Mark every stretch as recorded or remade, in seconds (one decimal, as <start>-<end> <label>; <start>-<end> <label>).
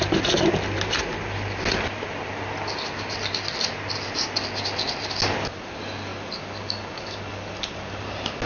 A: 0.0-8.5 recorded